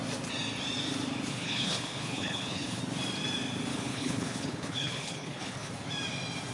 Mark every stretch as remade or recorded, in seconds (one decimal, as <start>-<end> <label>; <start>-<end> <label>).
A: 0.0-1.3 recorded; 1.3-2.8 remade; 2.8-3.7 recorded; 3.7-5.7 remade; 5.7-6.5 recorded